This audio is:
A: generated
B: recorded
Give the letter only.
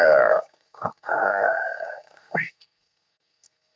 A